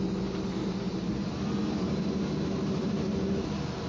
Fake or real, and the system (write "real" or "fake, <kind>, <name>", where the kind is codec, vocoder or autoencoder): real